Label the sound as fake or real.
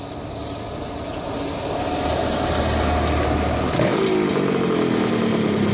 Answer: real